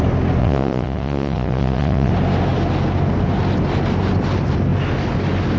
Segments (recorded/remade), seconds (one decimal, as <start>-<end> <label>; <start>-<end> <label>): 0.0-0.4 recorded; 0.4-2.1 remade; 2.1-5.6 recorded